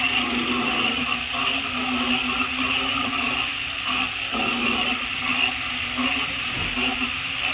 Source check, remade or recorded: recorded